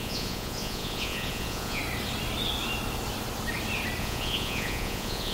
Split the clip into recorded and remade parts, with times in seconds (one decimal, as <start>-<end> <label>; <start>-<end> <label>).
0.0-1.8 remade; 1.8-4.0 recorded; 4.0-5.3 remade